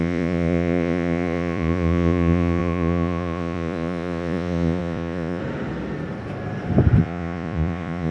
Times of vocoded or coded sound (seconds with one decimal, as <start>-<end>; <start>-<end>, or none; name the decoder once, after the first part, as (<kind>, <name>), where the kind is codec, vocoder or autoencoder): 0.0-5.4 (vocoder, Vocos); 7.0-8.1